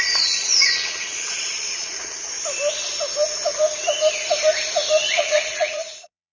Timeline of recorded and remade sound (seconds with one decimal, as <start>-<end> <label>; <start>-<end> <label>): 0.0-2.3 remade; 2.3-5.1 recorded; 5.1-6.3 remade